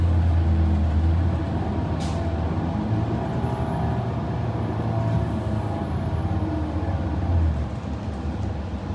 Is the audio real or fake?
real